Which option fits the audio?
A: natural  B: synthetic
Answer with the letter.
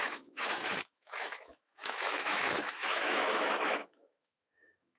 B